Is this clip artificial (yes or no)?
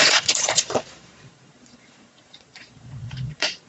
yes